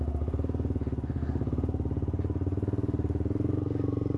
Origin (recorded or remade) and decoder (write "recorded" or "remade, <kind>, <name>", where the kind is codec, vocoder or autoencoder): recorded